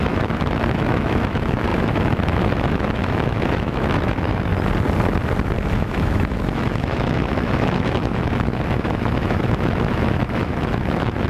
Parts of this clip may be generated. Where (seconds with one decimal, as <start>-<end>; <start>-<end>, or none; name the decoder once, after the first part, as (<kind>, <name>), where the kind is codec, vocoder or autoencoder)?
0.0-4.5 (autoencoder, DAC-VAE); 5.7-11.3